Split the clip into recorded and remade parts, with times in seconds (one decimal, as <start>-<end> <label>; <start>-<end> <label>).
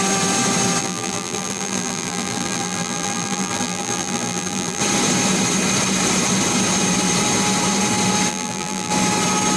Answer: 0.0-0.8 recorded; 0.8-4.8 remade; 4.8-8.3 recorded; 8.3-8.9 remade; 8.9-9.6 recorded